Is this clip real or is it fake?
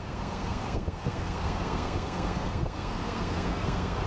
fake